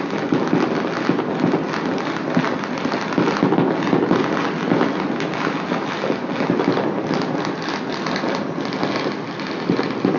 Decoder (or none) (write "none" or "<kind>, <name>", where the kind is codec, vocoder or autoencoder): none